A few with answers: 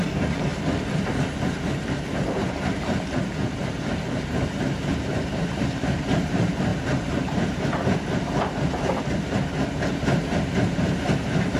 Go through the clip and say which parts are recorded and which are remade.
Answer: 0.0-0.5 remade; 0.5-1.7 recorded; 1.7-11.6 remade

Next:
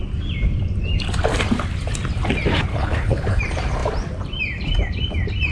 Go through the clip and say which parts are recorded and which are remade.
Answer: 0.0-2.7 recorded; 2.7-3.4 remade; 3.4-5.5 recorded

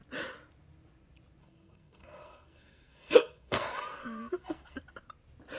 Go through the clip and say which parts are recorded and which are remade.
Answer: 0.0-1.4 recorded; 1.4-4.8 remade; 4.8-5.6 recorded

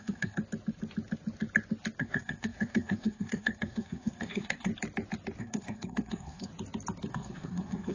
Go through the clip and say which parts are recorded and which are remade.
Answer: 0.0-0.4 remade; 0.4-2.0 recorded; 2.0-4.7 remade; 4.7-5.4 recorded; 5.4-6.5 remade; 6.5-7.1 recorded; 7.1-7.9 remade

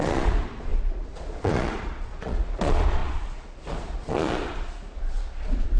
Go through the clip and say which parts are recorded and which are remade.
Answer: 0.0-5.8 remade